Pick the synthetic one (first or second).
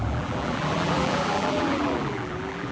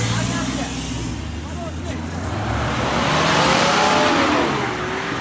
first